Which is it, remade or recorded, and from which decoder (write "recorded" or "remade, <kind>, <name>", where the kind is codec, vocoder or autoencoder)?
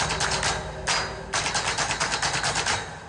recorded